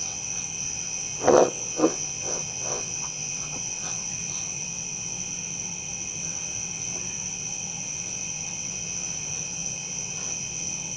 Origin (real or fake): fake